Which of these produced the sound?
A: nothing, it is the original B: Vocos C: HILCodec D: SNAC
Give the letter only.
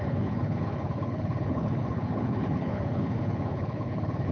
C